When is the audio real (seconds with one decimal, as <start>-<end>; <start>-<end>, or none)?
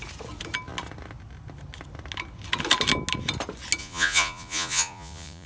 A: 0.0-3.8